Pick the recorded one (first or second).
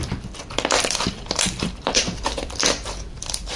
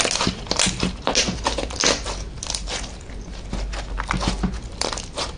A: second